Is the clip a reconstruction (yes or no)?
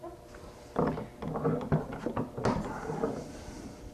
no